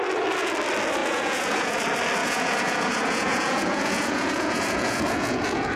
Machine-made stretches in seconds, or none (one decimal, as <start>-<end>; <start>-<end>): 1.0-1.8; 2.2-5.8

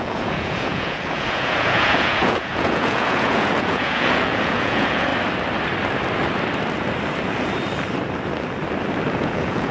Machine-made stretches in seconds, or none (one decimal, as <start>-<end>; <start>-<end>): 0.0-5.1; 9.1-9.7